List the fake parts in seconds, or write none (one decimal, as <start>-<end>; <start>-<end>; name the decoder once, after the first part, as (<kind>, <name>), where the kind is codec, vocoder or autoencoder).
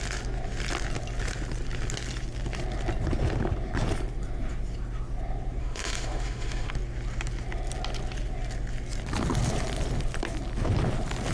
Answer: 5.6-6.7 (autoencoder, DAC-VAE)